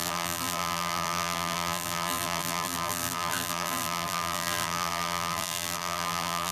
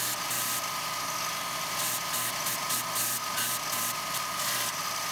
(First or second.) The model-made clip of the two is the first